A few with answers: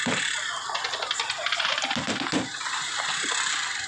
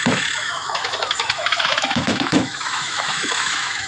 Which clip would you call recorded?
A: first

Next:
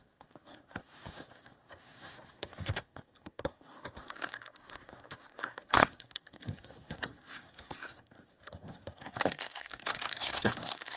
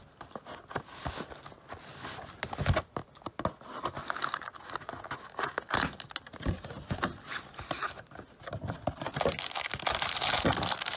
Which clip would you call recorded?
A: second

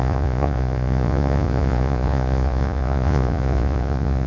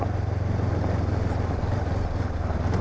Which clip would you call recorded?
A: second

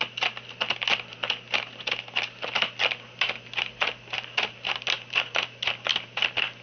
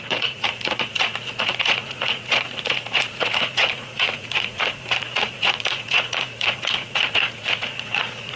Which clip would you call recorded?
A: first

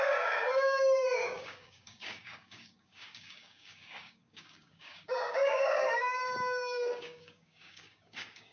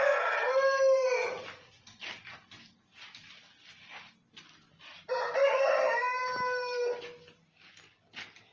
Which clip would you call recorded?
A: second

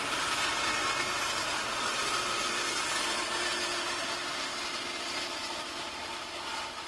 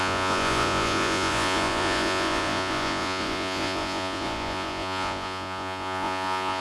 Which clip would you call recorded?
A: first